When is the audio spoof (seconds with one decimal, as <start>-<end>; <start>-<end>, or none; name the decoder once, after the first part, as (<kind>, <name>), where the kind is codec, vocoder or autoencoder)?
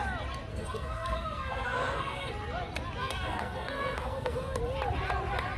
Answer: 0.5-2.3 (codec, SNAC); 3.0-4.6